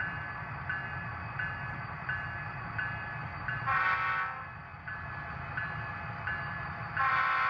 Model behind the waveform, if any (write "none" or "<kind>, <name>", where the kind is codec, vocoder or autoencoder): none